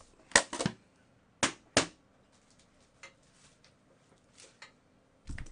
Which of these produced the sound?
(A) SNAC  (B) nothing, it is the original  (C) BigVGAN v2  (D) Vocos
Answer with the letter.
B